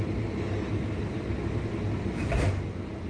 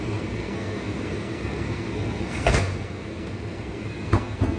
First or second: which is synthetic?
second